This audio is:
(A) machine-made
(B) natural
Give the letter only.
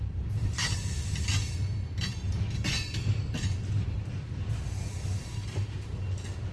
B